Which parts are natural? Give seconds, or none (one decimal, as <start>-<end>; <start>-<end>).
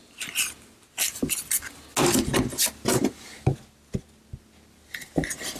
0.0-5.6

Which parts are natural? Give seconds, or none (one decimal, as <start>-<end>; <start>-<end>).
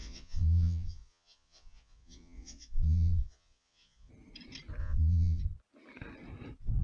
4.1-4.8; 5.4-6.8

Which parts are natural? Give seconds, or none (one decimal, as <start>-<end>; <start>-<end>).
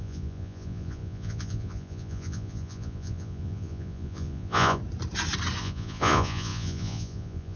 4.8-5.6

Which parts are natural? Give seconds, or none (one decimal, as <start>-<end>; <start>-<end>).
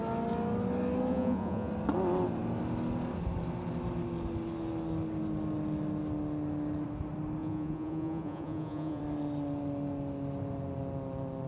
0.0-1.1; 1.7-7.4; 9.0-11.5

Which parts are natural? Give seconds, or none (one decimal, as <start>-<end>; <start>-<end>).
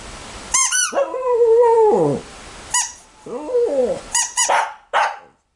0.0-0.6; 2.2-3.8; 4.5-5.6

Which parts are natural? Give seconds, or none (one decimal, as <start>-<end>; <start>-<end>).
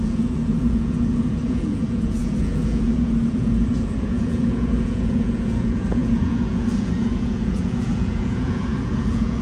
none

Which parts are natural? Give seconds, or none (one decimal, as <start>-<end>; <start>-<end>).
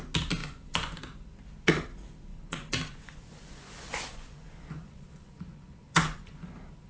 0.0-0.4; 1.0-2.3; 6.4-6.9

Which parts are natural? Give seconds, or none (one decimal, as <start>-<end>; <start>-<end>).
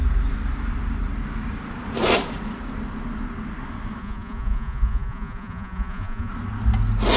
0.0-4.0; 6.3-7.2